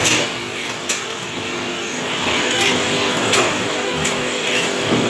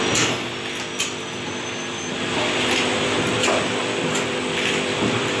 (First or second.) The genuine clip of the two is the second